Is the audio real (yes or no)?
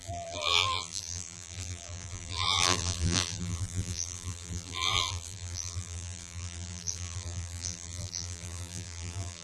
no